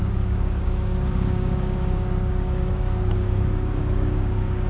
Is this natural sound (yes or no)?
no